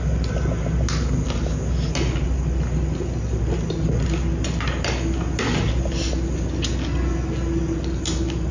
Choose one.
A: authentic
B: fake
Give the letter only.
A